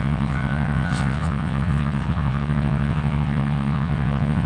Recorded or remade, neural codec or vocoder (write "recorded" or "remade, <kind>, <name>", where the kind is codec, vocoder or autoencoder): remade, vocoder, WaveNeXt